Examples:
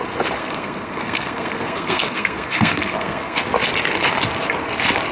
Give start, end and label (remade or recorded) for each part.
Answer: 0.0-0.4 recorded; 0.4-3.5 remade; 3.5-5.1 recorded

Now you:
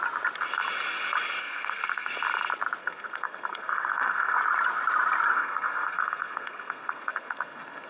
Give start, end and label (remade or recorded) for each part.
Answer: 0.0-1.4 recorded; 1.4-2.1 remade; 2.1-2.8 recorded; 2.8-4.4 remade; 4.4-5.3 recorded; 5.3-7.9 remade

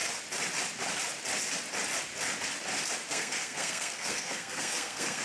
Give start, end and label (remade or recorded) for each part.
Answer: 0.0-3.1 recorded; 3.1-5.2 remade

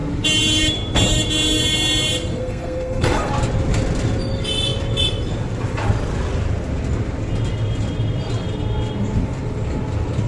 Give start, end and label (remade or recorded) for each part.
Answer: 0.0-2.3 recorded; 2.3-3.3 remade; 3.3-10.3 recorded